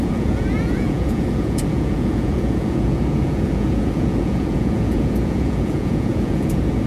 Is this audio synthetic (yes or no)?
yes